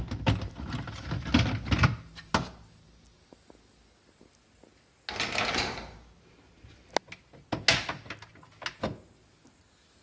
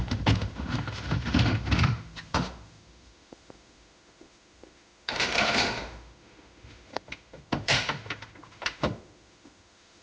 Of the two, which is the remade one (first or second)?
second